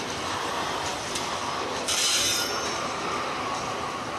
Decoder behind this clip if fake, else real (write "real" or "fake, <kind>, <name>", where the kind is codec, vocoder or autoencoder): real